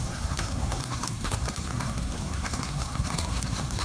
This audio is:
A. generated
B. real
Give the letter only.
A